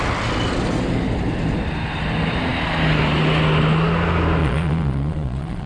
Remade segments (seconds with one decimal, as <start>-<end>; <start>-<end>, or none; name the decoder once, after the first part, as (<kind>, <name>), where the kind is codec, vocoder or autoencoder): 4.4-5.7 (vocoder, Vocos)